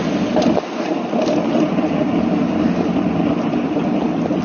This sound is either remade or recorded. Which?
recorded